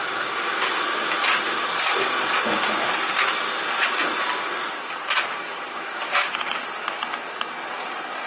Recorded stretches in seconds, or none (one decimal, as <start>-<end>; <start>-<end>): 0.0-8.3